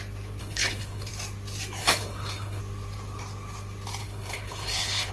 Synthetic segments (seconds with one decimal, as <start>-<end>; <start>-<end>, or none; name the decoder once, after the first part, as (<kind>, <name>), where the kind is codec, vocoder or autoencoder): 0.4-1.1 (codec, HILCodec); 1.8-2.6; 4.0-5.1